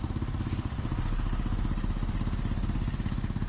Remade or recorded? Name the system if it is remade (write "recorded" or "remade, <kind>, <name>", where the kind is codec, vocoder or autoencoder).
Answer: recorded